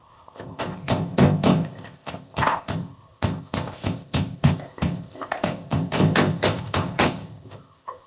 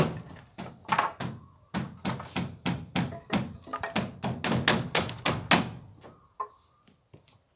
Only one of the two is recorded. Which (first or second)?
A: second